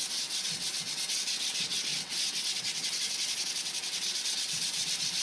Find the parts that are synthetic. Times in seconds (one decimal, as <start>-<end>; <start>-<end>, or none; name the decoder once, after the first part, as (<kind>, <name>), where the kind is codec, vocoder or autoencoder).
0.0-5.2 (vocoder, WaveNeXt)